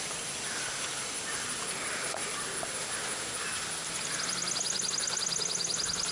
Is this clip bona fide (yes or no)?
yes